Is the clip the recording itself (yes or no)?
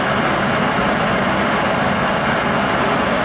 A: yes